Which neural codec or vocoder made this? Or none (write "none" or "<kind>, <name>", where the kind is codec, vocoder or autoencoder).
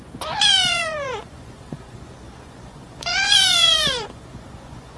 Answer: vocoder, Vocos